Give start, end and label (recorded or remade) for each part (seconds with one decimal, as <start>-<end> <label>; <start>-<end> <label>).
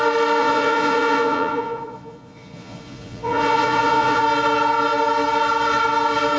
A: 0.0-0.4 recorded; 0.4-4.2 remade; 4.2-6.4 recorded